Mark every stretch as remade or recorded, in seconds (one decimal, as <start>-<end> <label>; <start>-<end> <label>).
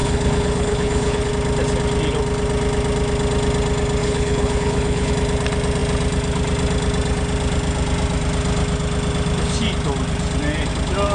0.0-1.3 remade; 1.3-4.0 recorded; 4.0-5.1 remade; 5.1-11.1 recorded